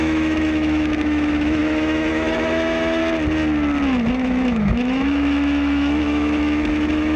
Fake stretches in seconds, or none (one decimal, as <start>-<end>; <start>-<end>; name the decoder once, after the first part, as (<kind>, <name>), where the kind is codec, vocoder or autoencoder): 0.0-3.0 (autoencoder, DAC-VAE); 4.1-7.2

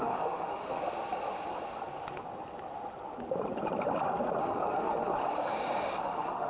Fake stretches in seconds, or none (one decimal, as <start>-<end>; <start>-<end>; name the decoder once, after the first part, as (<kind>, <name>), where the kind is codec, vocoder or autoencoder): 0.0-0.8 (autoencoder, DAC-VAE); 4.4-5.1; 5.9-6.5

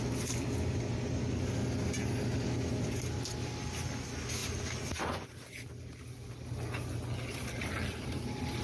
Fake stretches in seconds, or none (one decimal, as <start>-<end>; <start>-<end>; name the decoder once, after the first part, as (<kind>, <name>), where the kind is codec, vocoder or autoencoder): none

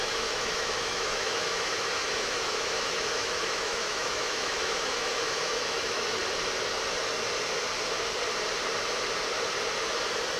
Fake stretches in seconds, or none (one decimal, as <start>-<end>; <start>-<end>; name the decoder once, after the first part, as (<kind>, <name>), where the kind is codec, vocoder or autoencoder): 0.0-6.2 (autoencoder, DAC-VAE)